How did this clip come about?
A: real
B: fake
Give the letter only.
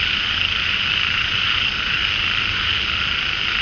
A